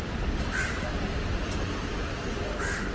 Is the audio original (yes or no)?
yes